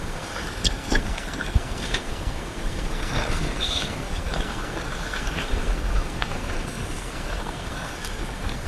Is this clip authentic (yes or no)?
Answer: no